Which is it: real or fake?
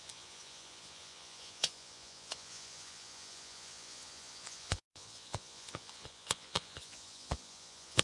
fake